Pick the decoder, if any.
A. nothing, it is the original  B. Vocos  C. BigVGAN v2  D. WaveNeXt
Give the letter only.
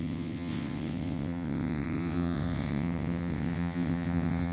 D